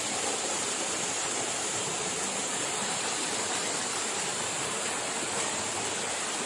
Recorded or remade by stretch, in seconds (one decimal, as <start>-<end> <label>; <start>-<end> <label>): 0.0-4.3 remade; 4.3-6.1 recorded; 6.1-6.5 remade